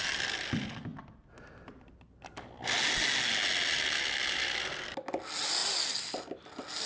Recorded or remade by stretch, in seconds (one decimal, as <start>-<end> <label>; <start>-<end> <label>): 0.0-6.9 recorded